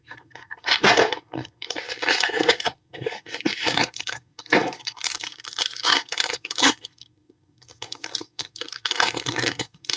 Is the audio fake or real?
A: fake